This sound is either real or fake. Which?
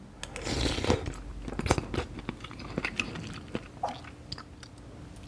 real